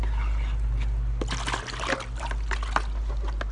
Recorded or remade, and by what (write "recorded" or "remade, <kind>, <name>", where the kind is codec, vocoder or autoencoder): recorded